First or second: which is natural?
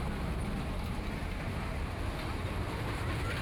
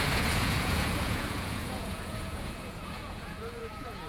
first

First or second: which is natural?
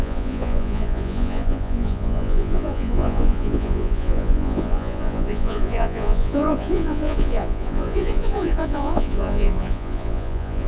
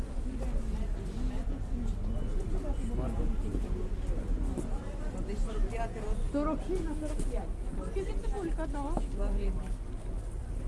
second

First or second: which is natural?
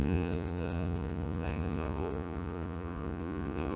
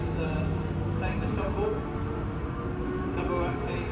second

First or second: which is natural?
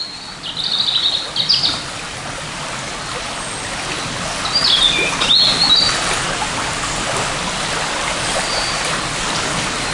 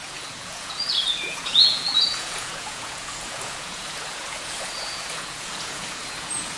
first